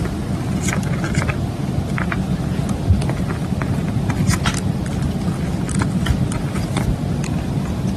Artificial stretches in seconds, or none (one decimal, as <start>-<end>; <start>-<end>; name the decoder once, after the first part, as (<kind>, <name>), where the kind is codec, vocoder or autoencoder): none